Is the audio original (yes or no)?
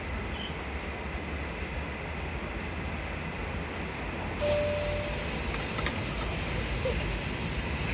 yes